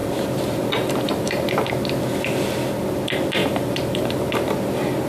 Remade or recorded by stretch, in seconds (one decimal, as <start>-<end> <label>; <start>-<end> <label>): 0.0-1.7 remade; 1.7-3.4 recorded; 3.4-4.1 remade; 4.1-5.1 recorded